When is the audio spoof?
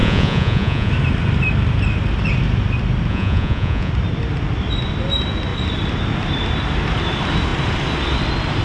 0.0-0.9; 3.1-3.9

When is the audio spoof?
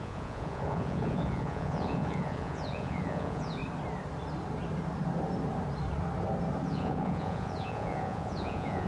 0.0-3.6; 6.7-8.9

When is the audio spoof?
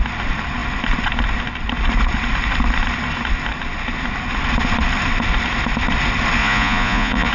6.4-7.3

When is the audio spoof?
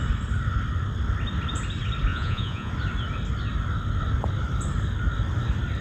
2.1-2.7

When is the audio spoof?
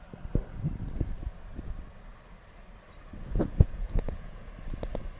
3.3-4.5